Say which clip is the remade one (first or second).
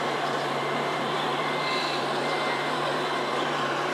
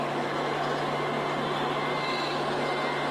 first